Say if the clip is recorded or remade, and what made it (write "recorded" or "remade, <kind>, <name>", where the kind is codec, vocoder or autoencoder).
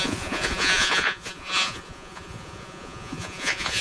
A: remade, vocoder, Vocos